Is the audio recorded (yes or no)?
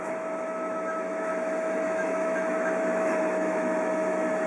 no